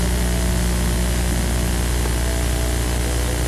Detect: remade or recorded recorded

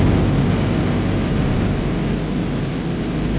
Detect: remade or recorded recorded